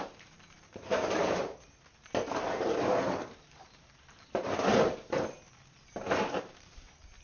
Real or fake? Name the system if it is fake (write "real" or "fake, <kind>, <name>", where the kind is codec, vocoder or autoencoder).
fake, vocoder, BigVGAN v2